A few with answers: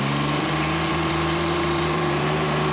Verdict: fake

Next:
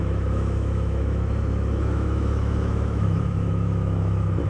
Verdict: fake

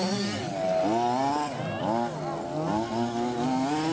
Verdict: real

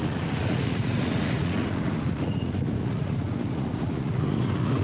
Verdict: fake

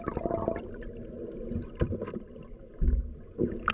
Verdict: real